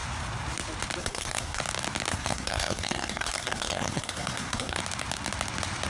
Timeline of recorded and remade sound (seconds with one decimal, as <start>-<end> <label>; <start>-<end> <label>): 0.0-1.0 recorded; 1.0-1.6 remade; 1.6-2.1 recorded; 2.1-4.8 remade; 4.8-5.9 recorded